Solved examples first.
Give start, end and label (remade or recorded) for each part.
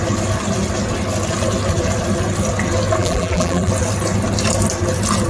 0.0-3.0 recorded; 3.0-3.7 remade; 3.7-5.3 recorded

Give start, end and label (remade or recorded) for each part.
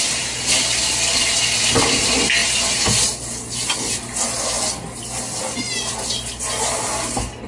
0.0-7.5 recorded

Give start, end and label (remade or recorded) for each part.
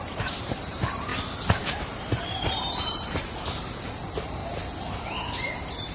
0.0-1.1 remade; 1.1-1.8 recorded; 1.8-4.4 remade; 4.4-5.9 recorded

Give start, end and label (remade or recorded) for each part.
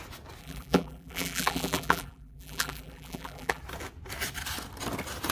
0.0-0.4 recorded; 0.4-3.6 remade; 3.6-5.3 recorded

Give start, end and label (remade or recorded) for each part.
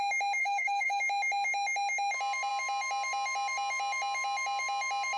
0.0-0.4 recorded; 0.4-1.0 remade; 1.0-5.2 recorded